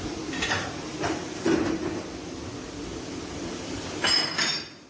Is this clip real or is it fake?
real